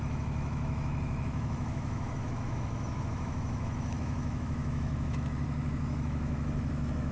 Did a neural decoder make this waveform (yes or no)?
yes